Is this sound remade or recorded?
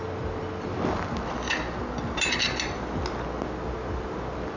recorded